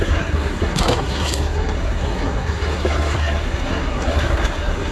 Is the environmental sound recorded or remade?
remade